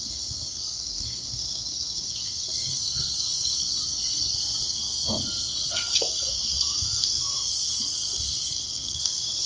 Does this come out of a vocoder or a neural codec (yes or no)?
yes